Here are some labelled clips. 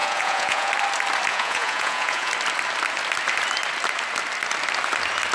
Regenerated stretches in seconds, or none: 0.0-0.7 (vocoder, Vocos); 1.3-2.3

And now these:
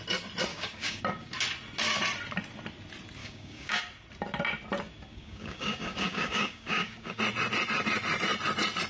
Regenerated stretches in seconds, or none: 0.5-1.0 (codec, DAC); 3.2-3.8; 5.1-7.2

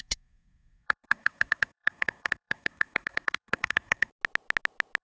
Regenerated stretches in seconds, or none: 0.0-4.1 (codec, SNAC)

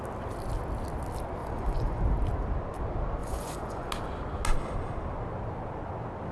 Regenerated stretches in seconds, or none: 1.4-2.0 (vocoder, Vocos); 3.2-3.9

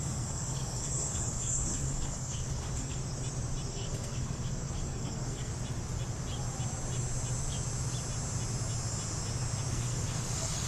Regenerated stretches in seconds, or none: 0.0-3.0 (codec, SNAC); 3.7-5.5; 9.7-10.7

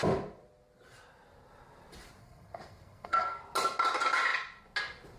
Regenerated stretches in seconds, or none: 2.2-3.4 (codec, SNAC)

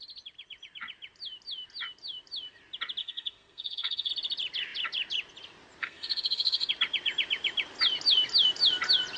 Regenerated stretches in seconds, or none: 3.0-4.1 (codec, SNAC); 5.8-6.7